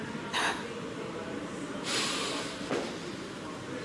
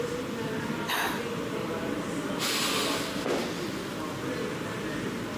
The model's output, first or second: first